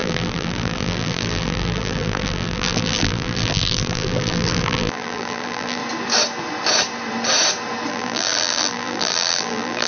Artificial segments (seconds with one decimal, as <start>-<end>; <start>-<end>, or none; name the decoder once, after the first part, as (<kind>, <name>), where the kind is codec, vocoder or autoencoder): 0.0-5.8 (vocoder, BigVGAN v2); 7.9-9.9